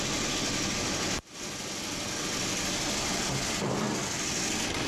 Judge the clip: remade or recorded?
recorded